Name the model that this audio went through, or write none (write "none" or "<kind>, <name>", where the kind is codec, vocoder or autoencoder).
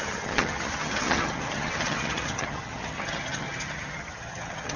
vocoder, HiFi-GAN